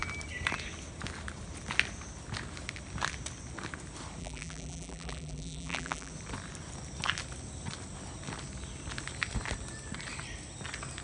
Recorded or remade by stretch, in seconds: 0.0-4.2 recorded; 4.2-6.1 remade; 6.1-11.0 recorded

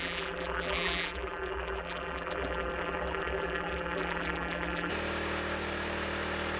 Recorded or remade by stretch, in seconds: 0.0-4.9 remade; 4.9-6.6 recorded

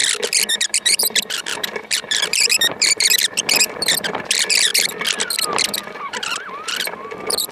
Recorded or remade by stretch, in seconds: 0.0-0.5 recorded; 0.5-4.7 remade; 4.7-5.2 recorded; 5.2-7.5 remade

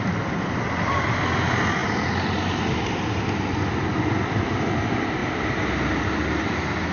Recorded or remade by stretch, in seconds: 0.0-1.8 recorded; 1.8-4.6 remade; 4.6-6.9 recorded

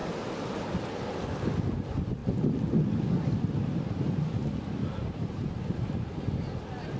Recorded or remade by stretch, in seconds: 0.0-4.8 recorded; 4.8-6.2 remade; 6.2-7.0 recorded